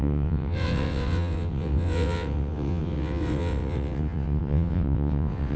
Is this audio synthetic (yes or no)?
yes